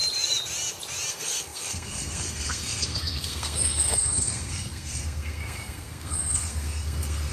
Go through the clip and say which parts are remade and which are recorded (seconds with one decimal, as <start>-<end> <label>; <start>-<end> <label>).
0.0-1.1 recorded; 1.1-7.3 remade